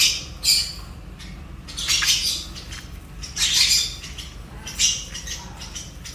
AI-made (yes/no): no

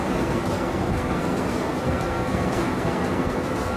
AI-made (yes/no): yes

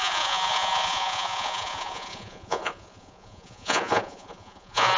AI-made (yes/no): yes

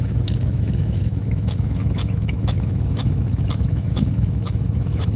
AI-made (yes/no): yes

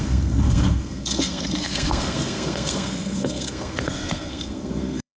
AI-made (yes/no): yes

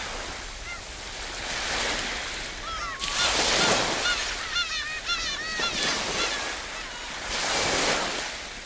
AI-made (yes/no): no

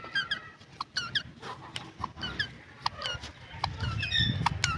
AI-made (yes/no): no